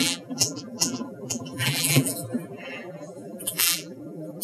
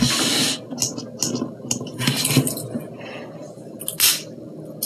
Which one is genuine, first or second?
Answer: second